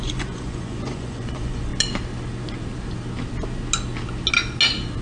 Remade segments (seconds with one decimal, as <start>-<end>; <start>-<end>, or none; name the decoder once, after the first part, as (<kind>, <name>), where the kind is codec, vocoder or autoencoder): 0.0-1.7 (vocoder, Vocos)